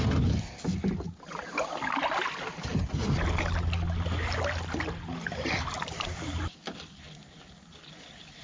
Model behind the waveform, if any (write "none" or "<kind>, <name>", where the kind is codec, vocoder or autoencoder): none